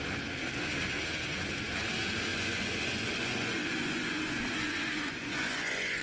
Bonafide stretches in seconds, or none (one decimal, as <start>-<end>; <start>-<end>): 0.0-2.3